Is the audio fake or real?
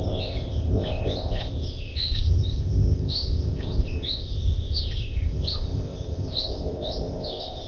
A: fake